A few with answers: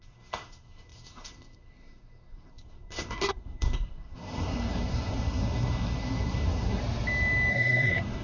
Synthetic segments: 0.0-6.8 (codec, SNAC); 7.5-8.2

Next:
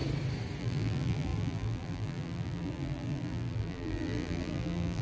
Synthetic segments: 0.6-5.0 (vocoder, BigVGAN v2)

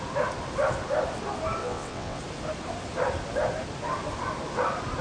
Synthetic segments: 1.6-2.2 (vocoder, WaveNeXt)

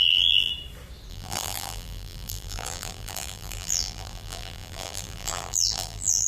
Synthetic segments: 0.0-0.5 (vocoder, BigVGAN v2); 1.1-6.3

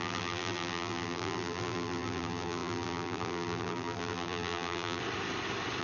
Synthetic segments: 0.0-5.0 (vocoder, BigVGAN v2)

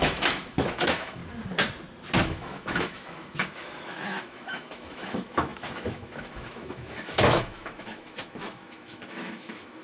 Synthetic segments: 0.0-1.2 (autoencoder, DAC-VAE); 2.2-9.8

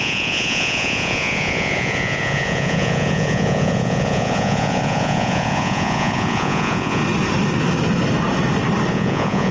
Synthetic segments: 0.0-7.0 (vocoder, Vocos); 8.9-9.5